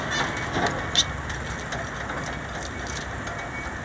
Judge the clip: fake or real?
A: real